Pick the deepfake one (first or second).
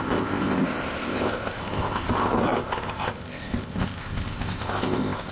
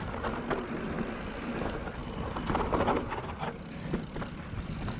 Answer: first